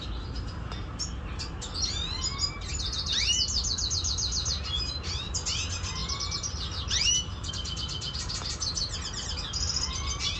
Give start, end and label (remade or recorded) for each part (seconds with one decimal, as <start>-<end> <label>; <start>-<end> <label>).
0.0-10.4 recorded